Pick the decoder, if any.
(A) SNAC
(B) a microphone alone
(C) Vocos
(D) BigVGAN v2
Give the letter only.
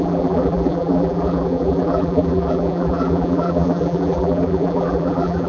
D